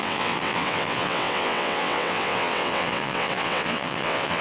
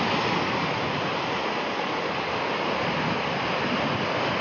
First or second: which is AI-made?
first